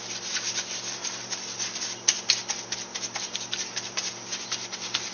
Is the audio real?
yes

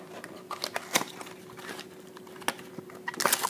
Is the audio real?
yes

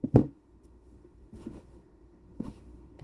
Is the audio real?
no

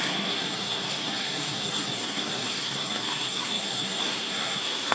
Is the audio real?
no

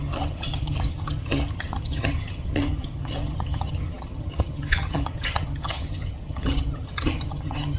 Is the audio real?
no